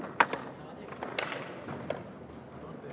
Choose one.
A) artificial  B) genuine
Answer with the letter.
B